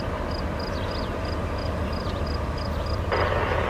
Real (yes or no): yes